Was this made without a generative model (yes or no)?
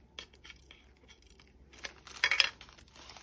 yes